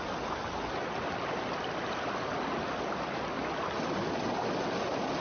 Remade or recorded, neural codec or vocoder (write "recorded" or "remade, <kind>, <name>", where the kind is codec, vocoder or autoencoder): recorded